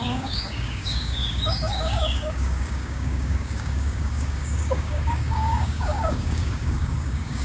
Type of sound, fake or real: fake